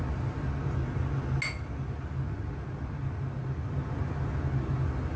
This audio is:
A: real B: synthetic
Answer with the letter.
A